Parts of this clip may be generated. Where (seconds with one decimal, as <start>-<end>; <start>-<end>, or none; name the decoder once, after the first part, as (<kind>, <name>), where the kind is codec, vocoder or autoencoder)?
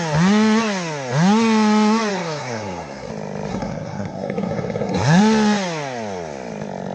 2.1-3.1 (codec, SNAC); 3.5-5.2